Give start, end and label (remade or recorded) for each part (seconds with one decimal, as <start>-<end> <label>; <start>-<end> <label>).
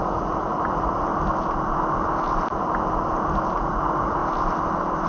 0.0-1.1 remade; 1.1-3.5 recorded; 3.5-4.2 remade; 4.2-5.1 recorded